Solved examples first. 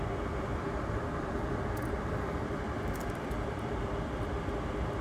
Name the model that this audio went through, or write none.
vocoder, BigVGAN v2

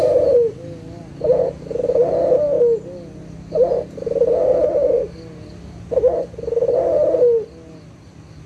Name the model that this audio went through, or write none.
none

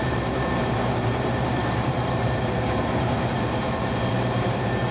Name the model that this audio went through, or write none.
vocoder, BigVGAN v2